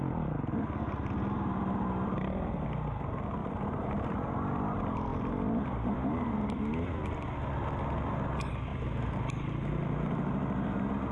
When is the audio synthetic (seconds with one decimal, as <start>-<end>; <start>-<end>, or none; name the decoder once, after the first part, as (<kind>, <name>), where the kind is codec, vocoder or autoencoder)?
3.4-4.1 (vocoder, BigVGAN v2); 5.1-6.3; 8.7-9.7